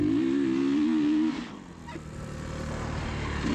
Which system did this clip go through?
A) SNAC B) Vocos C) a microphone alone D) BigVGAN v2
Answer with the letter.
C